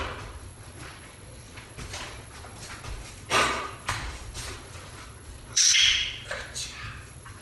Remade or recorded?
remade